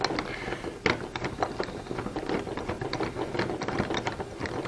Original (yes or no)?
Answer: yes